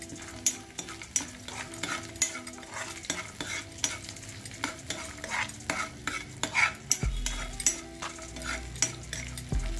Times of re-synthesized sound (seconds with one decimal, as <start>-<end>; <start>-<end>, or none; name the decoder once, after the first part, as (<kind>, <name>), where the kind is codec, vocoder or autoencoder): none

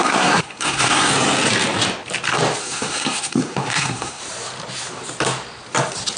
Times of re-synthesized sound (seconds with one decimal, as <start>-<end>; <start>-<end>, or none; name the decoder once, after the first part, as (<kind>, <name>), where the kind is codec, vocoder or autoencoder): 0.0-1.1 (codec, SNAC); 2.6-4.2

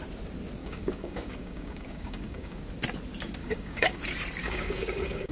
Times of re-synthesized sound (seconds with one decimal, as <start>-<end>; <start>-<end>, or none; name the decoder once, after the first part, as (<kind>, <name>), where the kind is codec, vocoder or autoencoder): 0.6-2.6 (codec, DAC); 3.4-4.0; 4.4-5.3

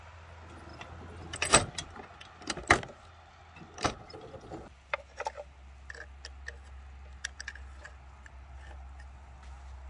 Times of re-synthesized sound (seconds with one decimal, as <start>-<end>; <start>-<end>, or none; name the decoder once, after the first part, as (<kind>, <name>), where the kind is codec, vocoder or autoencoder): none

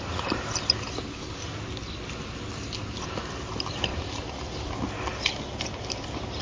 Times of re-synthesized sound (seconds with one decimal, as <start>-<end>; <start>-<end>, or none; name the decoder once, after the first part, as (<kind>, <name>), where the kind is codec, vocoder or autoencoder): none